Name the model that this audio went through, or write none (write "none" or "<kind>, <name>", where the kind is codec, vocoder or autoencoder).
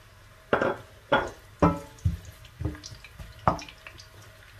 none